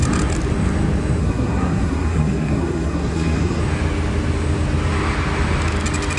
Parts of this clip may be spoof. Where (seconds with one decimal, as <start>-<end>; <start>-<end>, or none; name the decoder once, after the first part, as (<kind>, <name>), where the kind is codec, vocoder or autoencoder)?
1.2-3.6 (codec, SNAC)

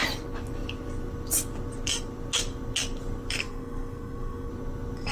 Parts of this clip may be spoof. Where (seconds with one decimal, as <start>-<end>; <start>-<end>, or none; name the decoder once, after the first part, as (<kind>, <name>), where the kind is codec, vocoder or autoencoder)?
3.4-4.5 (codec, SNAC)

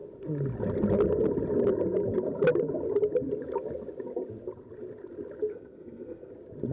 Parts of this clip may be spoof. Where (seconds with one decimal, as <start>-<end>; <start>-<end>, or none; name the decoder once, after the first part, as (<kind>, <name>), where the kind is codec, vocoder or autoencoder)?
5.5-6.3 (codec, SNAC)

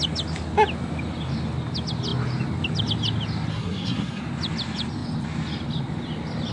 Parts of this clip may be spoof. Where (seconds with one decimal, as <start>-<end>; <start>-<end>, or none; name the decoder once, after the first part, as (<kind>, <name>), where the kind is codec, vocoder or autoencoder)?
3.5-4.2 (codec, SNAC)

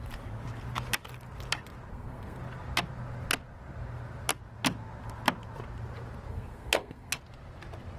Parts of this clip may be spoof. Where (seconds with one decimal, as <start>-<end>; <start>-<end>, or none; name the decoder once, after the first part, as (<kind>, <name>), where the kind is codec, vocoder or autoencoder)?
1.9-2.4 (codec, SNAC); 6.3-7.2

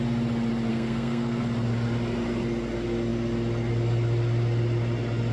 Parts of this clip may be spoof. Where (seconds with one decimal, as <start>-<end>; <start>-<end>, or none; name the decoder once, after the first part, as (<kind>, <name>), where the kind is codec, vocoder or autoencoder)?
0.7-1.4 (codec, SNAC)